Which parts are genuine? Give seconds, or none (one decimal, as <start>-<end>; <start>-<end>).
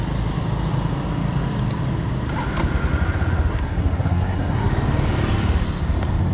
0.0-3.5; 4.7-6.3